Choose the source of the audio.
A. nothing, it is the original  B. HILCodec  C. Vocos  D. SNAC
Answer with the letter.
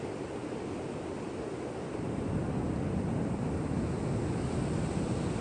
A